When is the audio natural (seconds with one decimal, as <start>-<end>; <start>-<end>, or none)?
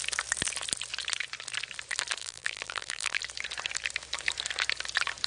0.0-2.2; 3.2-5.3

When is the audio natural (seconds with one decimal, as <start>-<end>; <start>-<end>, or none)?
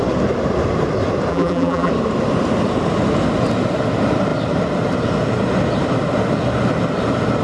0.0-1.3; 1.9-7.4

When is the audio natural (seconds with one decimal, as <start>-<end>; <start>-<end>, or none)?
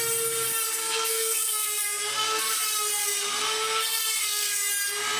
0.0-0.8; 2.4-3.0; 4.7-5.2